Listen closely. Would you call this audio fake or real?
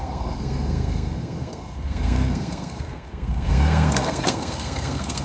fake